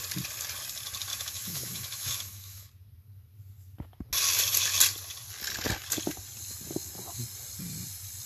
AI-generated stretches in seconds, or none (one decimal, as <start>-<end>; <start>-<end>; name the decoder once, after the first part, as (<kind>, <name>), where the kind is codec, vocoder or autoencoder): 1.1-2.7 (autoencoder, DAC-VAE)

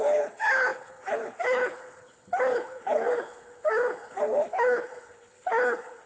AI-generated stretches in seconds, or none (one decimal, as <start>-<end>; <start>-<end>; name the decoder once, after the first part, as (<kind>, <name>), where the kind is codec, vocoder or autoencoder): 0.0-6.1 (codec, HILCodec)

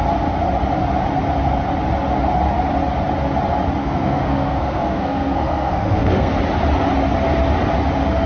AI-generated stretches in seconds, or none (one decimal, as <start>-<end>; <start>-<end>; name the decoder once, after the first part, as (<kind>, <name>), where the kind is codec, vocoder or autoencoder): 3.8-6.3 (codec, SNAC)